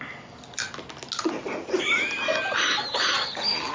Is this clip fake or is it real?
real